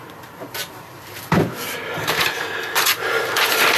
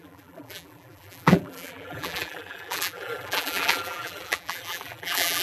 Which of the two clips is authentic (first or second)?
first